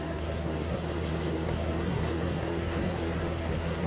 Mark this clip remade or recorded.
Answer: remade